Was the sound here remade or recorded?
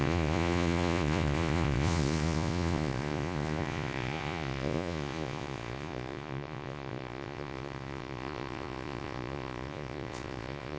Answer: remade